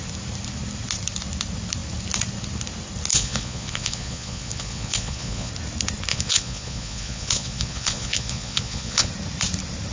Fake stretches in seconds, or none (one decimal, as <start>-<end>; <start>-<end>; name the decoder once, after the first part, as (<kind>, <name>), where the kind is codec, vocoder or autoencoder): 3.1-5.5 (vocoder, Vocos); 6.1-9.1